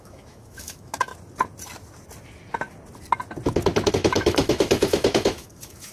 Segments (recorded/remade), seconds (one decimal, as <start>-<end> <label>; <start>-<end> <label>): 0.0-1.1 remade; 1.1-3.9 recorded; 3.9-5.9 remade